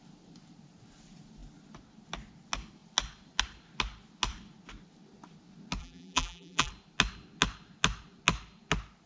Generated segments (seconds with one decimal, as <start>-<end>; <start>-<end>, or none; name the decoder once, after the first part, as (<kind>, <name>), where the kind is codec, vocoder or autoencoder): 5.8-6.7 (vocoder, BigVGAN v2)